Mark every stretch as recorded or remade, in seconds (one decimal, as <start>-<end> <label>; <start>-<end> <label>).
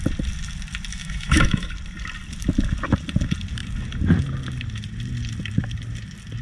0.0-0.9 recorded; 0.9-1.7 remade; 1.7-6.4 recorded